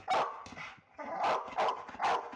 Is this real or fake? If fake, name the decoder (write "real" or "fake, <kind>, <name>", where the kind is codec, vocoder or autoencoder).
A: real